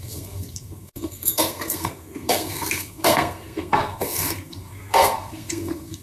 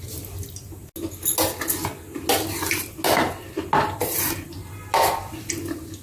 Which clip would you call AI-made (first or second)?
first